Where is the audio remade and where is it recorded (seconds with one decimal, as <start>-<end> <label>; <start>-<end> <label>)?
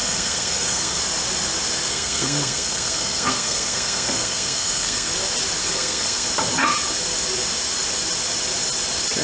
0.0-1.0 remade; 1.0-1.9 recorded; 1.9-5.1 remade; 5.1-5.6 recorded; 5.6-6.3 remade; 6.3-9.2 recorded